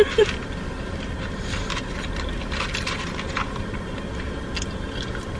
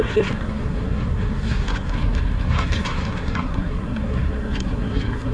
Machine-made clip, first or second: second